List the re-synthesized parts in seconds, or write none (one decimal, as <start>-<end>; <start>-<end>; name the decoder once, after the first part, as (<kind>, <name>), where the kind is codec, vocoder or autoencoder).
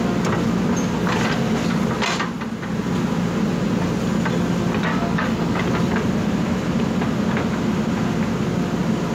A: 4.9-5.6 (codec, DAC)